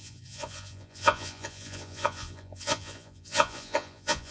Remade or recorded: remade